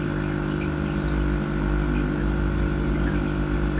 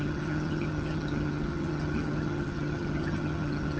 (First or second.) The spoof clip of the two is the second